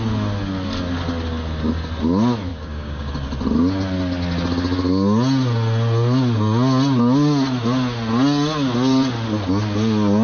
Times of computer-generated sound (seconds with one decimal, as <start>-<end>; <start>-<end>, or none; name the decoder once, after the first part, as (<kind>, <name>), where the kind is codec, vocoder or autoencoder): 2.5-3.1 (codec, DAC)